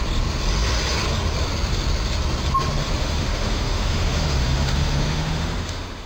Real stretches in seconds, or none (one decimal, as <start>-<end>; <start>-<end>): 0.0-3.0